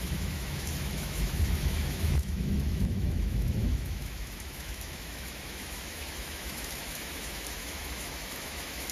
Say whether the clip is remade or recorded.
remade